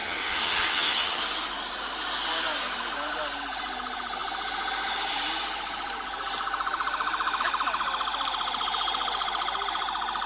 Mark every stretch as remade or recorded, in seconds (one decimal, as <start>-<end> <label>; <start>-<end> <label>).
0.0-1.2 remade; 1.2-10.3 recorded